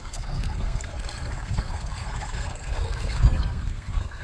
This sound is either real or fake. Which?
fake